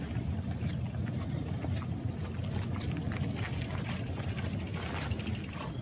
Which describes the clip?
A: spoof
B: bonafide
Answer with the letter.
B